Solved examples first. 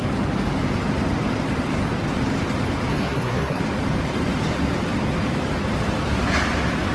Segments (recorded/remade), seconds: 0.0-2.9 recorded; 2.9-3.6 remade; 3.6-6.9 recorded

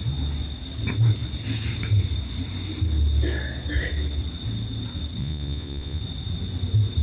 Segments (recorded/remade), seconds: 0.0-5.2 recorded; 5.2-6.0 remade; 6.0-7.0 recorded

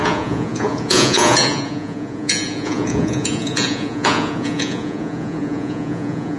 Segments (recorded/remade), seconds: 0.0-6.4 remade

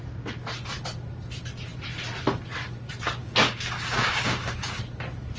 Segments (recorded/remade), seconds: 0.0-3.2 recorded; 3.2-4.8 remade; 4.8-5.4 recorded

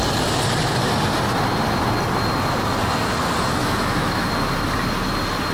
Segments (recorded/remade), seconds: 0.0-3.6 recorded; 3.6-4.3 remade; 4.3-5.5 recorded